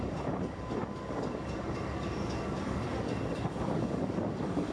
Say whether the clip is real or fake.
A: fake